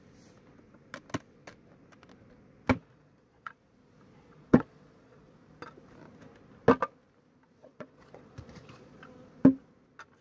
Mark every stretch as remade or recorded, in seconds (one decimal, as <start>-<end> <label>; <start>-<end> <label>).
0.0-2.8 recorded; 2.8-3.6 remade; 3.6-4.3 recorded; 4.3-5.3 remade; 5.3-7.6 recorded; 7.6-9.0 remade; 9.0-10.2 recorded